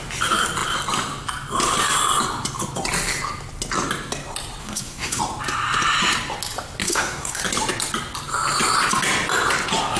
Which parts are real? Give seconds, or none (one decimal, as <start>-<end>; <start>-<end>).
0.0-4.6; 5.2-6.8; 7.4-10.0